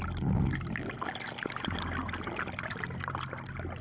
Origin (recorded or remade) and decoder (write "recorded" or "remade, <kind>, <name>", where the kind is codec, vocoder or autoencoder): recorded